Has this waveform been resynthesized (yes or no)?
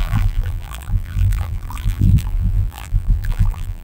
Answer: yes